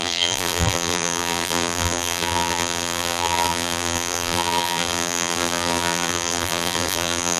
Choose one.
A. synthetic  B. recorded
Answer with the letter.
A